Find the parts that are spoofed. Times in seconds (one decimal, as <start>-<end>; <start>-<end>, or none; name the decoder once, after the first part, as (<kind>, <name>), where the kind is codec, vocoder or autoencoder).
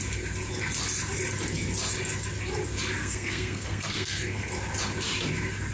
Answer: 3.0-4.5 (codec, SNAC)